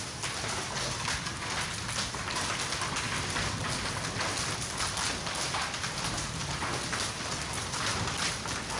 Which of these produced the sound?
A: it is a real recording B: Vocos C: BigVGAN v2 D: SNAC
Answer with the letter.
A